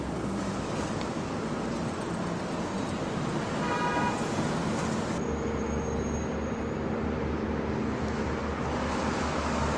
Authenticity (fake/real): real